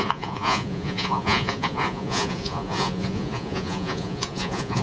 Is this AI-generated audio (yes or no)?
yes